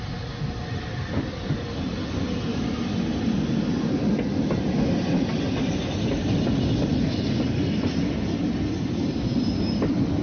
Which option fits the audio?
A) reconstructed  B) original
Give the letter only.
B